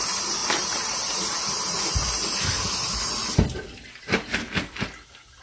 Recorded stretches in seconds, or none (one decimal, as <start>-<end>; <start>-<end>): 2.2-5.4

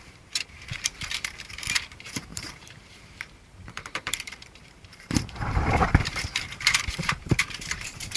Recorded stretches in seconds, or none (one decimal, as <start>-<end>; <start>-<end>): none

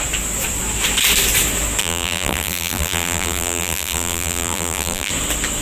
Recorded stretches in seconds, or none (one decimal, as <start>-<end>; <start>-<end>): 0.0-1.8; 5.1-5.6

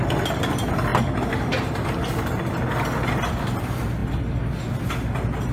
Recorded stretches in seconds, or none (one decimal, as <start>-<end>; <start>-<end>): 0.0-5.5

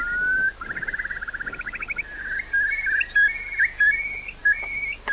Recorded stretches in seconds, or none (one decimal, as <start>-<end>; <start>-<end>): 0.0-5.1